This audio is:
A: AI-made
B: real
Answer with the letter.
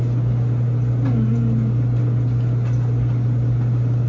B